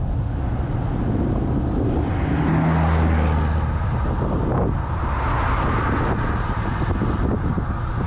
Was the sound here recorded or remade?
recorded